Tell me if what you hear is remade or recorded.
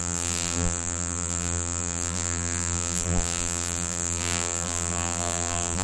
remade